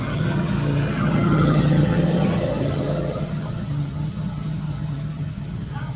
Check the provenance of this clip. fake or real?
fake